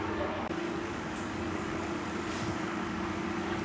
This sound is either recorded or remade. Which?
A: remade